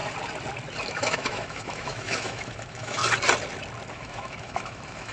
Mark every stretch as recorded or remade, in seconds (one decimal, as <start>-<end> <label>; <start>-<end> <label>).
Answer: 0.0-0.9 recorded; 0.9-3.0 remade; 3.0-3.9 recorded; 3.9-5.1 remade